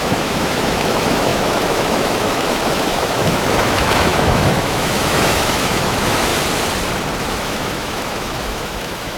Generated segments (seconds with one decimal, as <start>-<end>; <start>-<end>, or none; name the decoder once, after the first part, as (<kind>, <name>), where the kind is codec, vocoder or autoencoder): 0.0-6.3 (autoencoder, DAC-VAE); 7.2-9.2